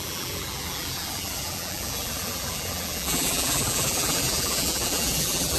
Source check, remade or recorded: remade